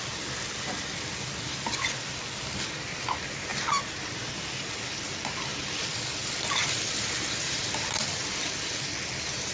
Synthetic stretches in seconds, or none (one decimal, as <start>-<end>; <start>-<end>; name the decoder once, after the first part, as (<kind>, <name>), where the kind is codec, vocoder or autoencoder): 5.5-6.9 (vocoder, BigVGAN v2)